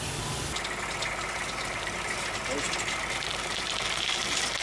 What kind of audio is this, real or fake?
real